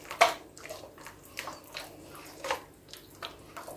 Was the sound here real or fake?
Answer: real